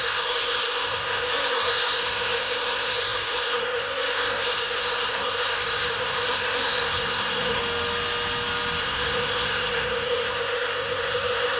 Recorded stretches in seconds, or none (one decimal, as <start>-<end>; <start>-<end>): 7.6-8.8